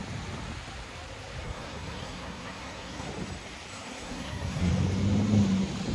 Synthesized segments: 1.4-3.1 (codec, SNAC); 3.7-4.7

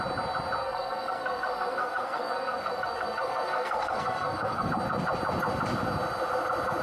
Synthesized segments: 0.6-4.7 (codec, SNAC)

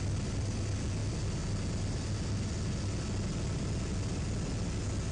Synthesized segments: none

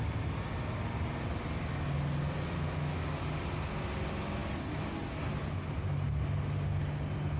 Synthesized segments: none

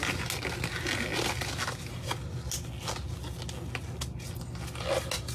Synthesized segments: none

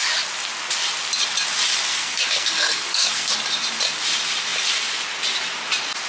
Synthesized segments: 1.9-3.3 (codec, SNAC)